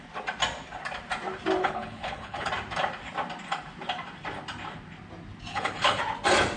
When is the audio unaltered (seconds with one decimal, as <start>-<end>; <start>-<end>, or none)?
0.0-1.6; 2.5-5.5; 6.0-6.6